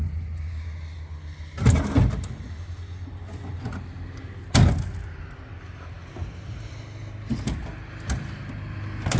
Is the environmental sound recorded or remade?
recorded